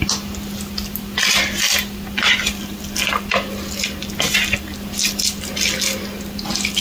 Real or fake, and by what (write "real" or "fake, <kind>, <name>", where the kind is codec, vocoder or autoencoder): real